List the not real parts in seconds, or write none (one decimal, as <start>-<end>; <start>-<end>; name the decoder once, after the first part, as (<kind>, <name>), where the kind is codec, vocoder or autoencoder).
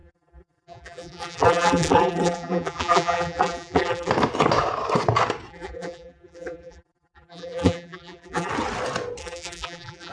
0.0-4.1 (vocoder, BigVGAN v2); 5.5-8.5; 9.2-10.1